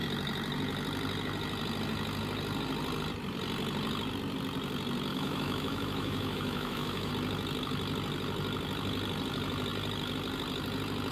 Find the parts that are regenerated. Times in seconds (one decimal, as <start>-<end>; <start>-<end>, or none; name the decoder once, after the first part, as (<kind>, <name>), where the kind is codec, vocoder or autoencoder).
5.1-7.1 (autoencoder, DAC-VAE)